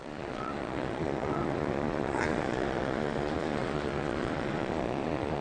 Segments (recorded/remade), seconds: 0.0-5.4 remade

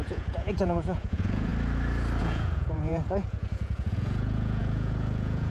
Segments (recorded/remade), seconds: 0.0-1.5 remade; 1.5-2.2 recorded; 2.2-5.5 remade

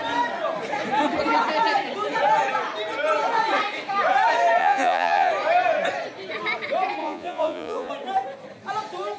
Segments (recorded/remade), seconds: 0.0-4.6 recorded; 4.6-5.3 remade; 5.3-7.0 recorded; 7.0-7.9 remade; 7.9-9.2 recorded